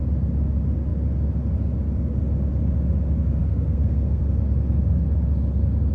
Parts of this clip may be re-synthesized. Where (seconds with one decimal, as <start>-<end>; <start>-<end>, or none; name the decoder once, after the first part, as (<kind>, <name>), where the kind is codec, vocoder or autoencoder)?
3.4-4.2 (codec, SNAC)